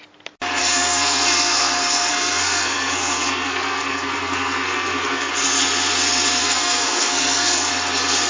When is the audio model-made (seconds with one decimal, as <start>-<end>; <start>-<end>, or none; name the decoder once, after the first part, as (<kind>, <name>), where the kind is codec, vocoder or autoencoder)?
0.6-5.3 (codec, SNAC); 6.4-7.7